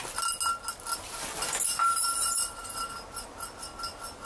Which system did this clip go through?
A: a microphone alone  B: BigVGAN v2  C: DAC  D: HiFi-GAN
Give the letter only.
A